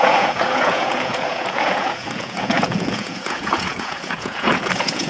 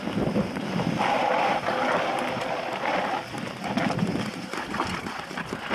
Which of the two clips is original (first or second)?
second